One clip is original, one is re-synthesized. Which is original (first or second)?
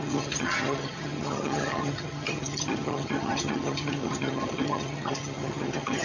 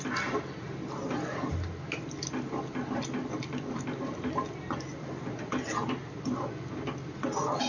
second